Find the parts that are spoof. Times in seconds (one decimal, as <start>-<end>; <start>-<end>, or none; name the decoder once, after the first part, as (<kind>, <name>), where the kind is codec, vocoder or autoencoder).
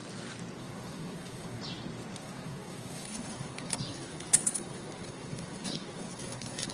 0.6-1.6 (codec, SNAC); 2.2-6.7